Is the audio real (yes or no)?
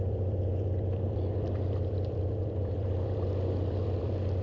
no